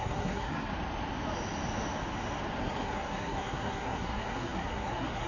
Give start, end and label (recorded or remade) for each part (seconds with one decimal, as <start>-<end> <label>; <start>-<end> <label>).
0.0-0.7 remade; 0.7-2.6 recorded; 2.6-5.3 remade